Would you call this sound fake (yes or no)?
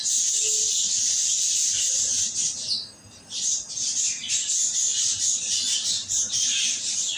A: no